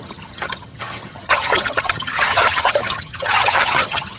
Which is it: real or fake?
fake